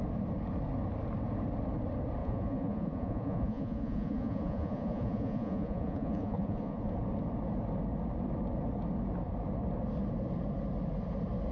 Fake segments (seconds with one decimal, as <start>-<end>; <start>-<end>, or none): 2.2-6.9